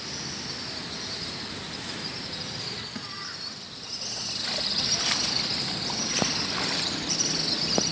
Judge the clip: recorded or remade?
recorded